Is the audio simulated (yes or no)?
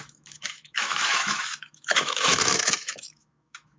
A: yes